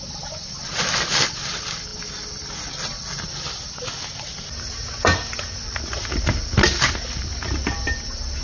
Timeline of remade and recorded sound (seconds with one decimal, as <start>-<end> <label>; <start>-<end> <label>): 0.0-8.4 recorded